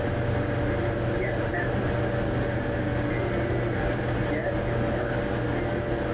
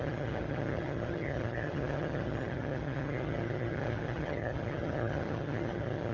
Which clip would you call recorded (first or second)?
first